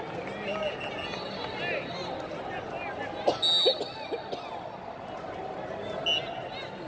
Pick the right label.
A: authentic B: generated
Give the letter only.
A